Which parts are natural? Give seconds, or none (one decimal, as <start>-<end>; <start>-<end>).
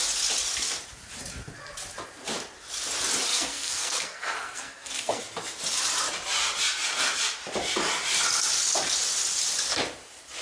0.0-3.3; 5.2-10.4